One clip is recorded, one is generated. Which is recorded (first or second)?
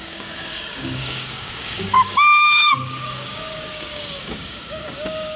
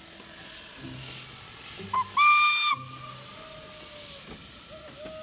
second